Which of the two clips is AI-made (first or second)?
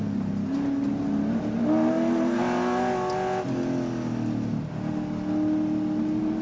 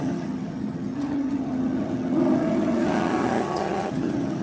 second